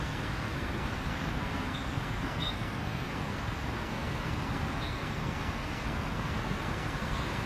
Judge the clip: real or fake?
fake